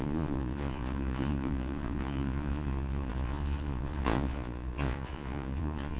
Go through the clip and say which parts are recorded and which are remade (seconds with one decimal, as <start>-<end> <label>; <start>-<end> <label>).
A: 0.0-6.0 remade